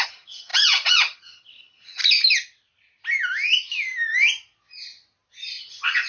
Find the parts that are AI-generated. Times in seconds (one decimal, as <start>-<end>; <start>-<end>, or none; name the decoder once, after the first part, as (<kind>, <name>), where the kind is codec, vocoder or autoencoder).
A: 0.0-2.0 (vocoder, HiFi-GAN); 5.6-6.1